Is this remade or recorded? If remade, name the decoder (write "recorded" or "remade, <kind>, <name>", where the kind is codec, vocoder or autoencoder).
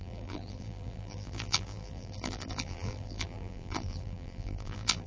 remade, vocoder, BigVGAN v2